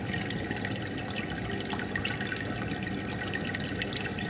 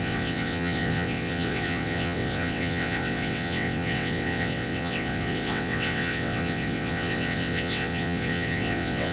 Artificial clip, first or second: second